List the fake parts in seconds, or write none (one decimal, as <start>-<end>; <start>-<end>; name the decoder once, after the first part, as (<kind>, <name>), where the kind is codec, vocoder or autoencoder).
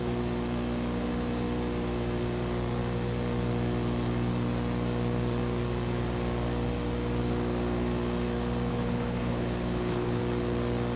8.7-10.2 (codec, HILCodec)